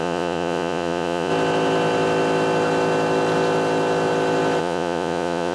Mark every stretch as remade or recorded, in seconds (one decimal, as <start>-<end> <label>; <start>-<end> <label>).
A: 0.0-1.3 remade; 1.3-4.6 recorded; 4.6-5.5 remade